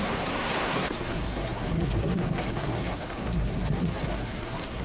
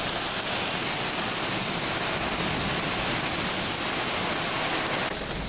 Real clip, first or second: second